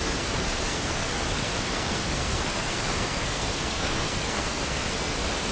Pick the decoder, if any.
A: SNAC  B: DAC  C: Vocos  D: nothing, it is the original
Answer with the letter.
A